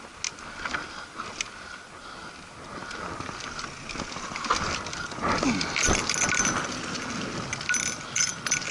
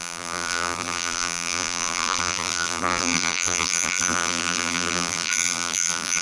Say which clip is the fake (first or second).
second